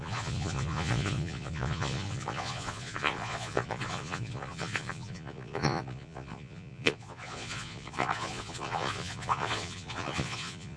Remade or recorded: remade